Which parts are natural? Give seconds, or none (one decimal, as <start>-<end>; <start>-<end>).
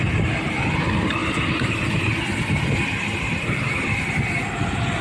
0.0-1.2; 4.2-5.0